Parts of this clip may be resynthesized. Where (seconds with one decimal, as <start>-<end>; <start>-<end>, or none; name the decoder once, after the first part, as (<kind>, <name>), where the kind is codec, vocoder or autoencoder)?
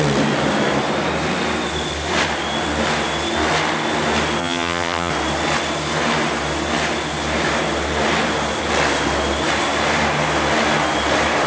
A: 4.4-5.1 (vocoder, HiFi-GAN)